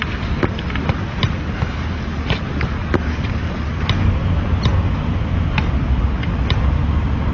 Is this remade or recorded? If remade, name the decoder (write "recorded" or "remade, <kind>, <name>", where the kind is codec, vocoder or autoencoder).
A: recorded